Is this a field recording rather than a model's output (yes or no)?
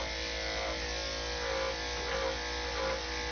yes